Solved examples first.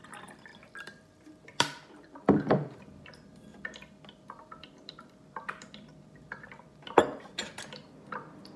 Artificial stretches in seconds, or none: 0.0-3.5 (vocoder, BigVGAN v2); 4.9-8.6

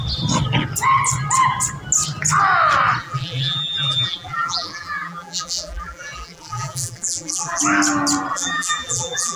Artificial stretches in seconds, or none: 3.0-7.6 (vocoder, BigVGAN v2); 8.3-9.4

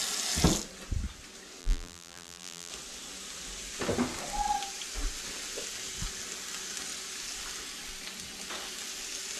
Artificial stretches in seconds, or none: 1.6-2.7 (vocoder, BigVGAN v2)

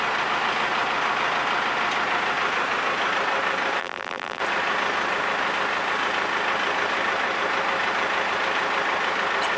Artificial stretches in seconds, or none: 3.8-4.4 (vocoder, BigVGAN v2)

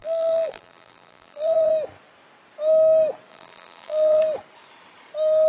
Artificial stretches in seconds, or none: 0.0-1.7 (vocoder, BigVGAN v2); 3.3-4.2

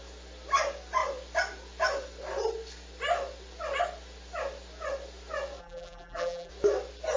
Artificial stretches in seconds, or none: 5.6-6.5 (vocoder, BigVGAN v2)